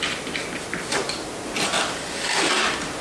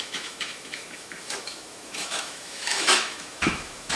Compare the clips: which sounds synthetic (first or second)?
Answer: second